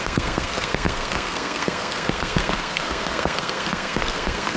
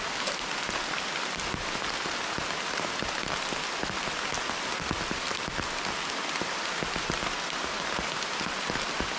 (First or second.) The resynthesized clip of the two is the first